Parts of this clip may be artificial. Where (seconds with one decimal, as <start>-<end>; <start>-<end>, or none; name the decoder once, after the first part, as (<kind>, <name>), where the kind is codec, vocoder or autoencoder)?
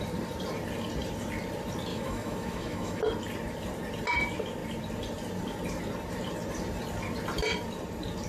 1.9-3.0 (autoencoder, DAC-VAE)